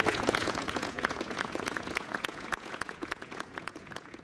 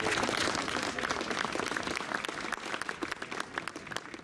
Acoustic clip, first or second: second